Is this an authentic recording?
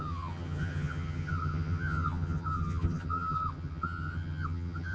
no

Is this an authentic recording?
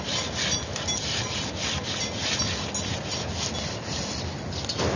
yes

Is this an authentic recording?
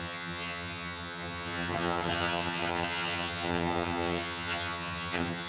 no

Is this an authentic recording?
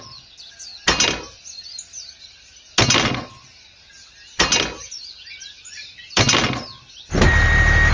yes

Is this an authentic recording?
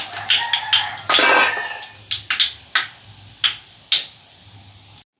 yes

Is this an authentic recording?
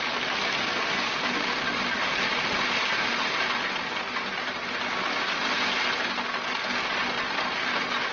yes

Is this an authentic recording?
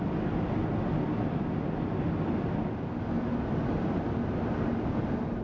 yes